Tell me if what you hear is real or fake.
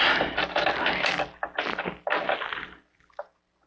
real